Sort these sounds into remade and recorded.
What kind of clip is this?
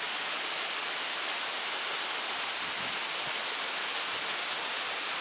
recorded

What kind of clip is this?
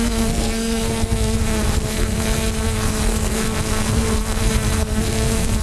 remade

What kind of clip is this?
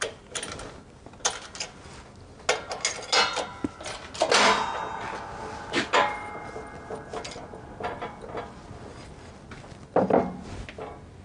recorded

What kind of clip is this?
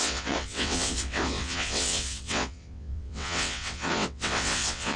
remade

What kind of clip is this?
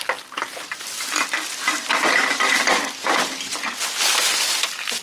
recorded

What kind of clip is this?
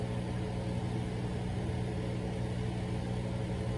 recorded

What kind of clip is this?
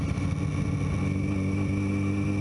recorded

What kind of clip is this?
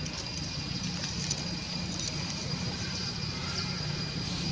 recorded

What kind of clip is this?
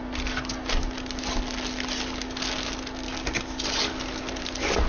recorded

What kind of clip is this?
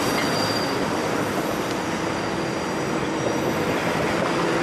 recorded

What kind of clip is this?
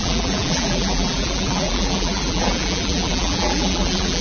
remade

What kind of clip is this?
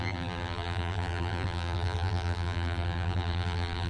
remade